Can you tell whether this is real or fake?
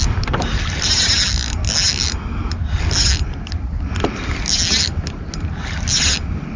real